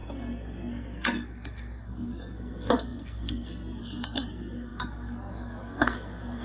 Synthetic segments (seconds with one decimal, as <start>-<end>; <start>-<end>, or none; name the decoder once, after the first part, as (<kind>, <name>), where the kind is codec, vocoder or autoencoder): 0.0-6.4 (codec, SNAC)